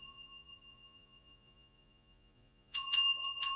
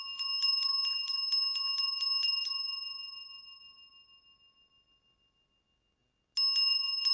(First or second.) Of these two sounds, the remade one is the first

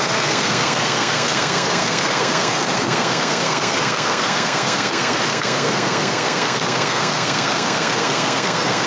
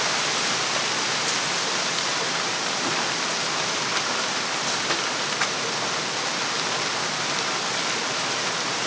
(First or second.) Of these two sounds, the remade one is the first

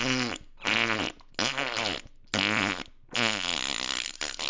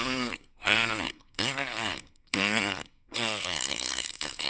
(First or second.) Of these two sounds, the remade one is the second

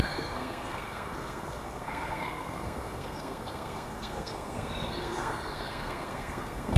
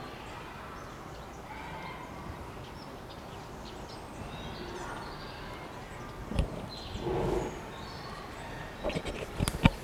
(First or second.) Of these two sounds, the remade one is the first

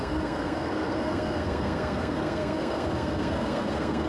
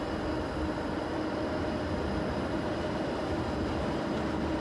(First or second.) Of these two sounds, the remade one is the first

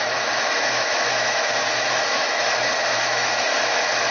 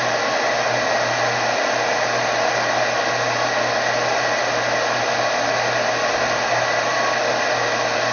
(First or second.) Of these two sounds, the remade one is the first